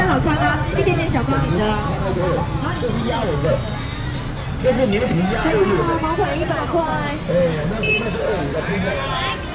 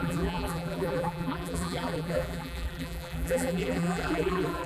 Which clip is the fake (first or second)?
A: second